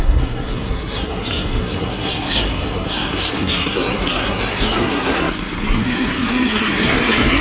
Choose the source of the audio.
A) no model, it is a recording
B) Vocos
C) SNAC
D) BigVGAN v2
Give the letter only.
C